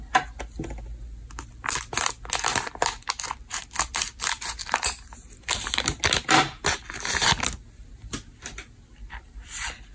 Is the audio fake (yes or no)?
no